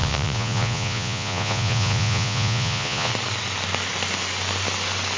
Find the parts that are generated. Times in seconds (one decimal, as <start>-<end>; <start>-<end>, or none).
0.0-3.1